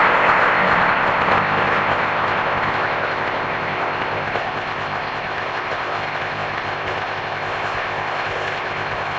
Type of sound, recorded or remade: remade